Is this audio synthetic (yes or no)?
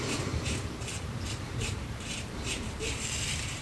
yes